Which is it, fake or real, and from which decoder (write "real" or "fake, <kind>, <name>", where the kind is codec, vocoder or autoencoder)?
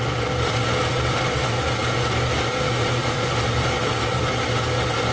real